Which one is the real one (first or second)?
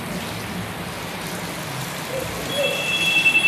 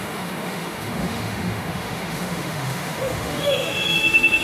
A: first